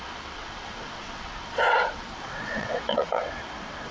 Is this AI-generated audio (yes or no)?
yes